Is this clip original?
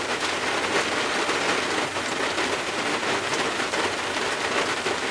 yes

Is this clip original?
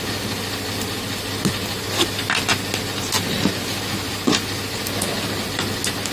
yes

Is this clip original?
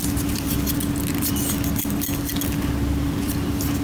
yes